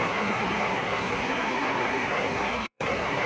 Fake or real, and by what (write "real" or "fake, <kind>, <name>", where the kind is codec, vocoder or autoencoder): fake, codec, SNAC